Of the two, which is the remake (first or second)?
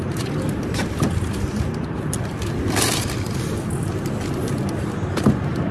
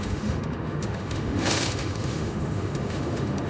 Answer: second